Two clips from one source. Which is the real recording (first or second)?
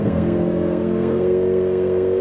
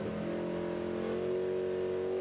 second